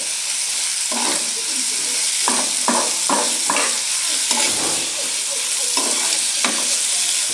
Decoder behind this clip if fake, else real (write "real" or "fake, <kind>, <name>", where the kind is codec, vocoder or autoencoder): real